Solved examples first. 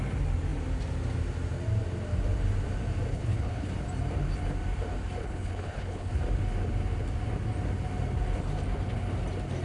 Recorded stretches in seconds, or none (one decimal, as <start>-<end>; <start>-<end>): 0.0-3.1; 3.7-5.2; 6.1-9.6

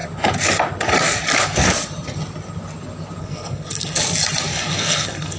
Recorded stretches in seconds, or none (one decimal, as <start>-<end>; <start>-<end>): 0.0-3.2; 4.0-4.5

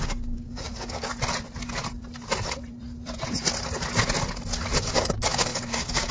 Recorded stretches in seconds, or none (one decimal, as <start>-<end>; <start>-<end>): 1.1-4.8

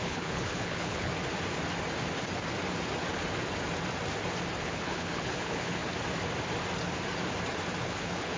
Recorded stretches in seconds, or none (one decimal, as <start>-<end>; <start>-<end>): 1.1-4.6; 5.8-7.8

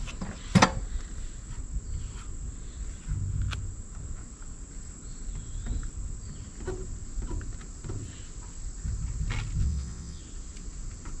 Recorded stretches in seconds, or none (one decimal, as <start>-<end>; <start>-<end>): 0.0-9.6; 10.2-11.2

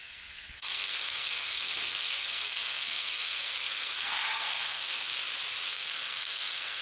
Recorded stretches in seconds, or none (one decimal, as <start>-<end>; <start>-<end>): 5.1-5.7

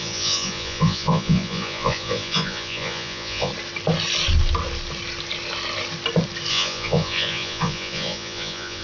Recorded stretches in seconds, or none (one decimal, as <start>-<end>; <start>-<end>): 3.5-6.5

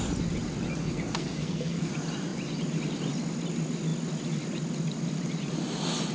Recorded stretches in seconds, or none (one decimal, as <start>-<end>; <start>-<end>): 0.0-0.8; 1.9-6.1